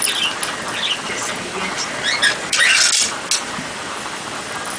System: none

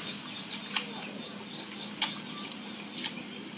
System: none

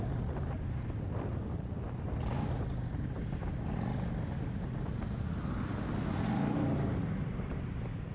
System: none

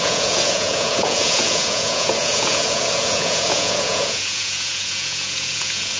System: vocoder, Vocos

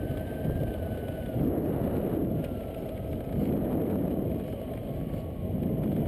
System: none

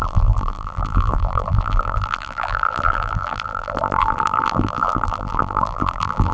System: vocoder, BigVGAN v2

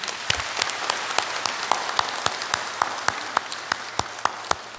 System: none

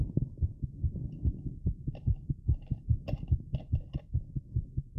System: none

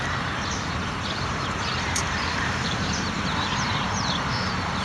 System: vocoder, BigVGAN v2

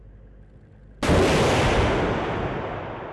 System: none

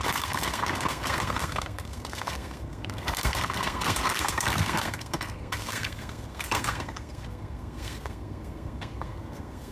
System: codec, SNAC